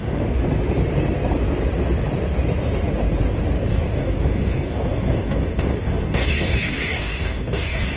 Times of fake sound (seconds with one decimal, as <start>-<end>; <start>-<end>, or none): 0.0-0.4; 3.7-8.0